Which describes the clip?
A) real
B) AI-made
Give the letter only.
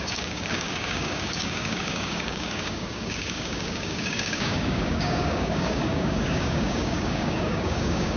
B